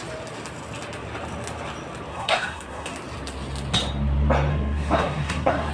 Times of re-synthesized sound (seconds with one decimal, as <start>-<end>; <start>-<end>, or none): 2.1-2.9; 4.5-5.7